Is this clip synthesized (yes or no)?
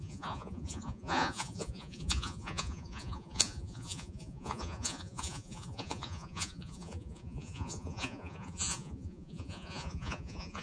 yes